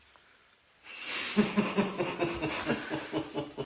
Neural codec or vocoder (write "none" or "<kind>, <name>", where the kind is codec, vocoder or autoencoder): none